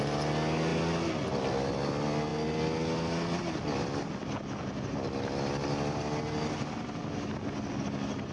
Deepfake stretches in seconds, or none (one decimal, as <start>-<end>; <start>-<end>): none